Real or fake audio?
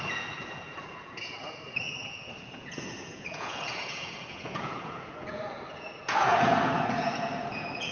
fake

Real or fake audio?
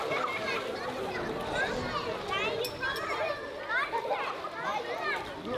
real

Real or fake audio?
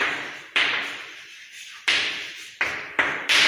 real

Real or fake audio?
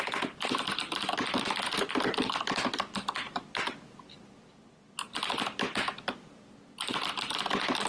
real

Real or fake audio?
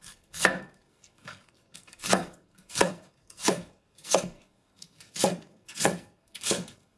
fake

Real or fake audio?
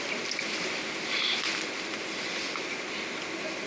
real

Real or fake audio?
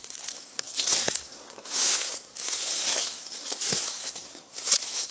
fake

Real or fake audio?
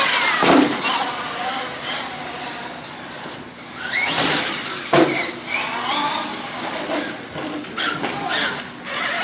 real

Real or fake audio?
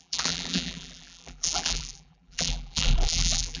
fake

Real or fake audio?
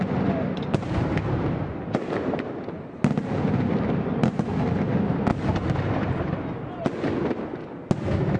real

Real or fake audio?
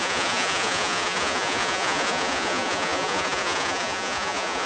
fake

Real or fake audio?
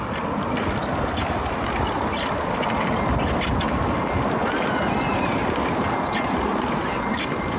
real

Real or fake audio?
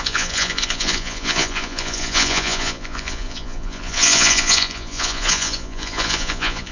fake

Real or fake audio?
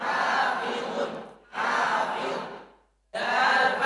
fake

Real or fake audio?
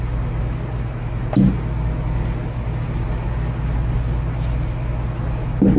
real